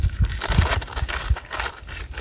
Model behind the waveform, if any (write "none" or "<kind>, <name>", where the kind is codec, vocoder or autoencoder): none